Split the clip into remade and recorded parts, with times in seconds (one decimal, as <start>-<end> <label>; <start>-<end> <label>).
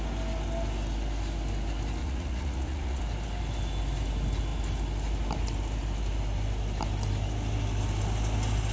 0.0-2.0 recorded; 2.0-3.0 remade; 3.0-8.7 recorded